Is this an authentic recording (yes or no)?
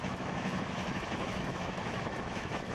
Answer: no